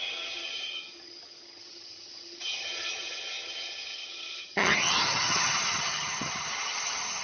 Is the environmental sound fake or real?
fake